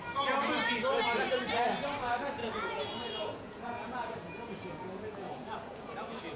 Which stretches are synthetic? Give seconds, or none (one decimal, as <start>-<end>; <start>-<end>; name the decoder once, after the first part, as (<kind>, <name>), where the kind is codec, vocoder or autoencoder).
2.4-6.4 (vocoder, Vocos)

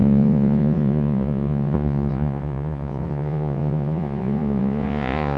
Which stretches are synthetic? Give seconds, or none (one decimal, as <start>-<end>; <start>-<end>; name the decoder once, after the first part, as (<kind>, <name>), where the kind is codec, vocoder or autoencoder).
0.0-5.4 (vocoder, Vocos)

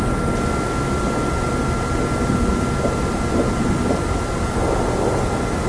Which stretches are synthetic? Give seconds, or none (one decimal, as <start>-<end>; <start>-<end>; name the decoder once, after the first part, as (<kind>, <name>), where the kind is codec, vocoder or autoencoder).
none

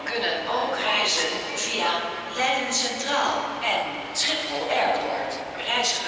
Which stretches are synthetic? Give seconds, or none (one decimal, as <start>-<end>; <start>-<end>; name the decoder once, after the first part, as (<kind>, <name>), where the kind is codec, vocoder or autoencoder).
0.6-1.9 (vocoder, Vocos); 4.4-5.4

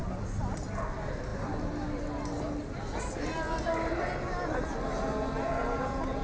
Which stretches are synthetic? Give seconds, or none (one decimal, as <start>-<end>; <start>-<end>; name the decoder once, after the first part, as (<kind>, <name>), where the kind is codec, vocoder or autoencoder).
none